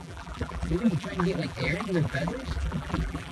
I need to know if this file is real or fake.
fake